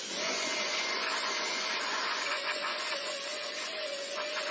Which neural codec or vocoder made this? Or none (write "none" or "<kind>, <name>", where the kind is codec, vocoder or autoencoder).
vocoder, Vocos